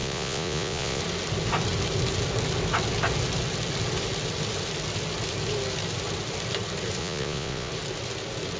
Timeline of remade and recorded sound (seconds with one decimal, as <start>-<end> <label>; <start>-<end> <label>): 0.0-1.0 remade; 1.0-7.0 recorded; 7.0-7.7 remade; 7.7-8.6 recorded